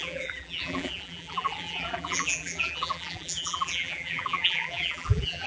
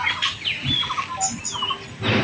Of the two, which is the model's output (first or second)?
first